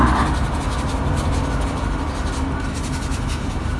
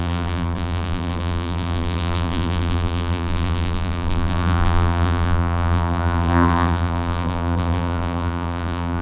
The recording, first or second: first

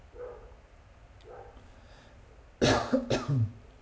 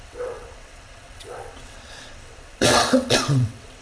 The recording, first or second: first